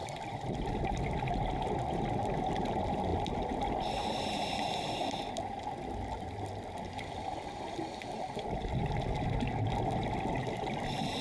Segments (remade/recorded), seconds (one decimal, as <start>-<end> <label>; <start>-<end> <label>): 0.0-11.2 recorded